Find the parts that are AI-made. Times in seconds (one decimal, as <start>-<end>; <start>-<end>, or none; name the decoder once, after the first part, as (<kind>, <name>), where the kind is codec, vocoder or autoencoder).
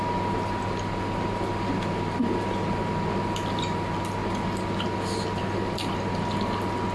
none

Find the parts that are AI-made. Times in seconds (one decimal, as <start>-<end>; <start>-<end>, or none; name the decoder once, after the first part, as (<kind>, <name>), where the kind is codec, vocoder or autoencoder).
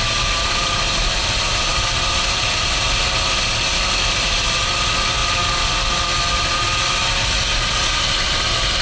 none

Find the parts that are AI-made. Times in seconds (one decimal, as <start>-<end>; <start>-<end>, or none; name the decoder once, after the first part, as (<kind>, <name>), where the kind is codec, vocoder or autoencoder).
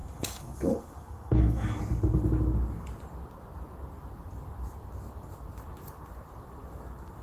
0.0-1.8 (codec, SNAC)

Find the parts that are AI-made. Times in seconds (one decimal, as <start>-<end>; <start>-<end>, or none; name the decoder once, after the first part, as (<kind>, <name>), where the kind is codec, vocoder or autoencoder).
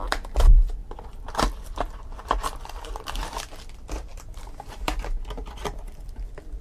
0.8-3.1 (vocoder, BigVGAN v2); 4.1-4.7